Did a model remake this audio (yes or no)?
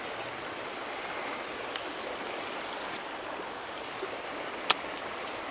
no